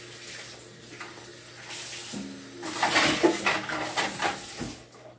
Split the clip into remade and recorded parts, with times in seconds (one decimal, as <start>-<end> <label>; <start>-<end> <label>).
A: 0.0-5.2 recorded